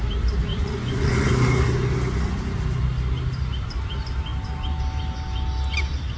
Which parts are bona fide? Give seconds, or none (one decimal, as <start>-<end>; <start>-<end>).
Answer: 0.0-0.5; 1.3-6.2